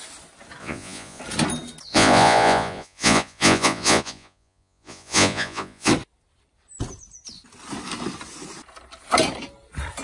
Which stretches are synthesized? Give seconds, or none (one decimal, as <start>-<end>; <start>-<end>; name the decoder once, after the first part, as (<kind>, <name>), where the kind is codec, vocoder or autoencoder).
0.6-1.2 (vocoder, Vocos); 1.9-5.9